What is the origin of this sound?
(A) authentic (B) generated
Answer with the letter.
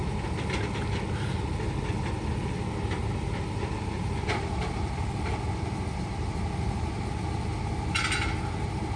A